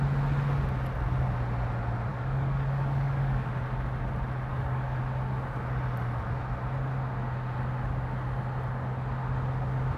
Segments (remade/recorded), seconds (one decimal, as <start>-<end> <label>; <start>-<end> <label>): 0.0-2.1 recorded; 2.1-3.5 remade; 3.5-4.5 recorded; 4.5-5.0 remade; 5.0-10.0 recorded